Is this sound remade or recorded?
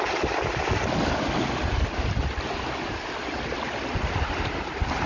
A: recorded